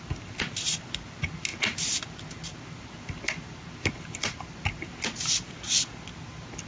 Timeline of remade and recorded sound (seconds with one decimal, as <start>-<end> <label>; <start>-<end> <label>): 0.0-6.7 recorded